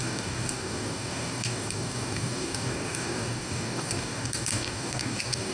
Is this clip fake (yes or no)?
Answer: yes